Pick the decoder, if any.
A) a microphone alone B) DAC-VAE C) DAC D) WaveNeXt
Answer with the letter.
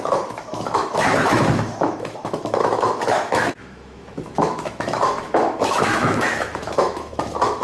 B